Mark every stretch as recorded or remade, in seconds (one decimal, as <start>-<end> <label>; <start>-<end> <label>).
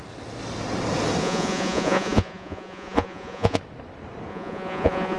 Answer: 0.0-1.2 recorded; 1.2-3.6 remade; 3.6-4.3 recorded; 4.3-5.2 remade